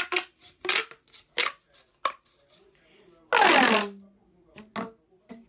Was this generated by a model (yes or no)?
no